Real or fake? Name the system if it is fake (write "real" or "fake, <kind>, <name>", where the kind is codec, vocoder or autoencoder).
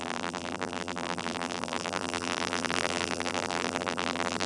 fake, vocoder, BigVGAN v2